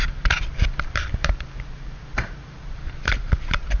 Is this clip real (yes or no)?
no